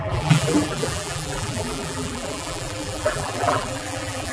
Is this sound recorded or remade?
remade